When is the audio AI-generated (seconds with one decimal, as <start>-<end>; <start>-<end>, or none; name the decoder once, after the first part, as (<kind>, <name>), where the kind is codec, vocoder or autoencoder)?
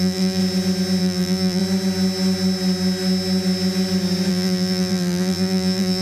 0.0-0.4 (vocoder, BigVGAN v2); 1.0-1.6; 4.3-6.0